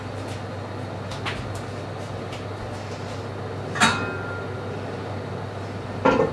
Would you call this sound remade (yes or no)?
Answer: no